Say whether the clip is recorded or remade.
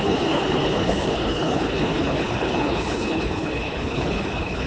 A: remade